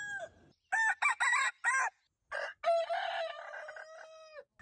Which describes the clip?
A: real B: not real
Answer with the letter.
A